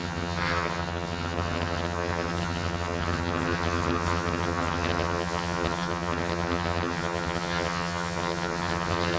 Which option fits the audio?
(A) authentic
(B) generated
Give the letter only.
B